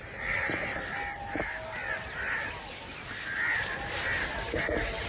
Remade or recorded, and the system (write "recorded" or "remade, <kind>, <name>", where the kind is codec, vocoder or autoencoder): recorded